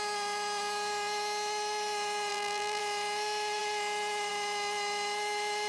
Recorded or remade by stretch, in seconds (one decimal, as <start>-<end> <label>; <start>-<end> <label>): 0.0-2.3 recorded; 2.3-2.8 remade; 2.8-5.7 recorded